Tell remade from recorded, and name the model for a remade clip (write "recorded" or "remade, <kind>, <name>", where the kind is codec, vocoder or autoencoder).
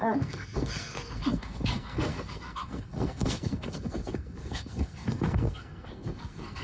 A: remade, codec, SNAC